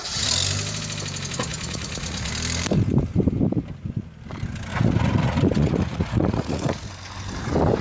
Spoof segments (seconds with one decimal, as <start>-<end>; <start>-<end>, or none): 1.5-2.3; 4.7-6.9